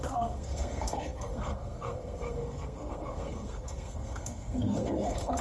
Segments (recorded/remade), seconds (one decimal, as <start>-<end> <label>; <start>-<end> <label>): 0.0-5.4 remade